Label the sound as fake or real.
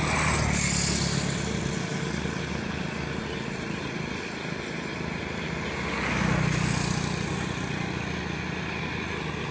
real